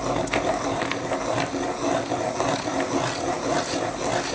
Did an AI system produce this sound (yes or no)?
no